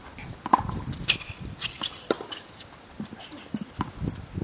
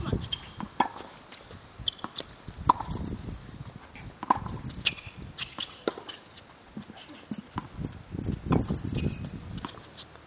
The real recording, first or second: second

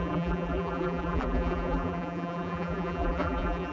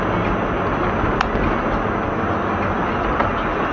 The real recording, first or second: second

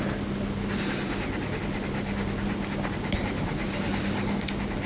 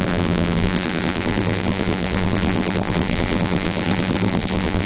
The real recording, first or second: first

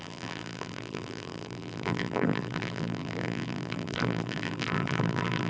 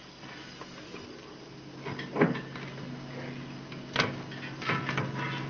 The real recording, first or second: second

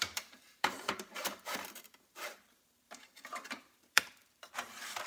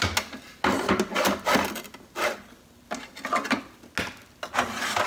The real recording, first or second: second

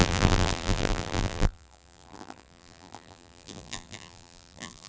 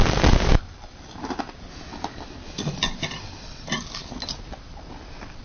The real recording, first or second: second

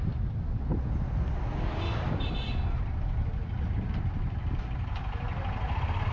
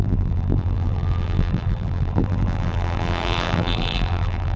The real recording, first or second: first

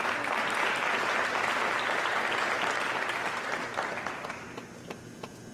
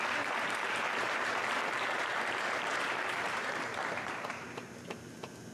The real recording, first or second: first